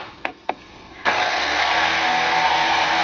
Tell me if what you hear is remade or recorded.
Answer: remade